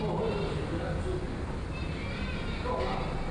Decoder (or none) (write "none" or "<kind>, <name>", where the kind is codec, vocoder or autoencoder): none